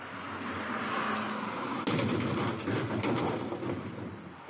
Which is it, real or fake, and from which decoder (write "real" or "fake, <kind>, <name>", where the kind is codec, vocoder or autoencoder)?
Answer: real